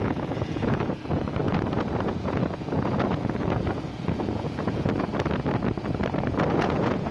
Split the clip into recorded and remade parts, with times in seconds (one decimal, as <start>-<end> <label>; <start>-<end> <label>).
0.0-5.1 remade; 5.1-6.5 recorded; 6.5-7.1 remade